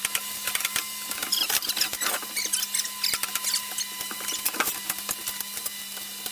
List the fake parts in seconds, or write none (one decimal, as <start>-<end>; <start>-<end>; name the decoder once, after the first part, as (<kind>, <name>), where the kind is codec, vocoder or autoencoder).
none